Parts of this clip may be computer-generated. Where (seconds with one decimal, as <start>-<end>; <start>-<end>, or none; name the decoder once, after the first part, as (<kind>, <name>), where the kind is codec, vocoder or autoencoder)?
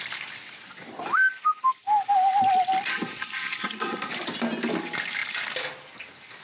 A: 2.9-4.1 (codec, SNAC)